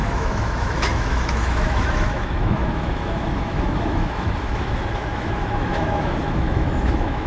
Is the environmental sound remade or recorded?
remade